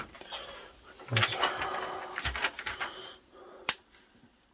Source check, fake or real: real